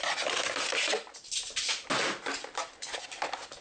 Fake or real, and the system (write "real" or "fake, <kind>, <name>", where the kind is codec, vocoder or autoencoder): real